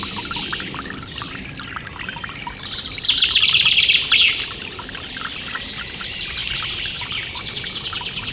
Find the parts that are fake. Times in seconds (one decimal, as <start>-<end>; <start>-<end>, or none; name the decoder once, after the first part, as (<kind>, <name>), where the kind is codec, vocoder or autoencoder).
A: 0.0-8.3 (vocoder, BigVGAN v2)